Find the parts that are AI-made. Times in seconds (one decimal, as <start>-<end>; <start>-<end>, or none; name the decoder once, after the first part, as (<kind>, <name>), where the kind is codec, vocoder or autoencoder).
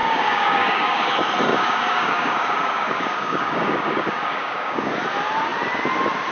0.0-1.1 (codec, DAC); 1.5-4.9